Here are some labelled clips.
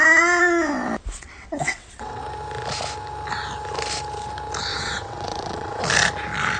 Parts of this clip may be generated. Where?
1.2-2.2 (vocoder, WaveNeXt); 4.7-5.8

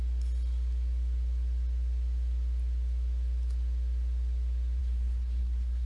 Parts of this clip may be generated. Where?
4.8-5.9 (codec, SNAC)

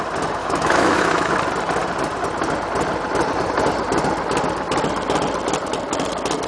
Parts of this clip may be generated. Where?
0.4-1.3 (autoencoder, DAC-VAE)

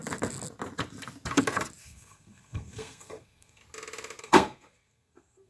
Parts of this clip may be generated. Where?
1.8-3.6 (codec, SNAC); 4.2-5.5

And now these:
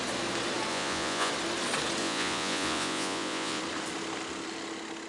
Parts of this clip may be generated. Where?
0.7-1.3 (vocoder, Vocos); 2.0-3.6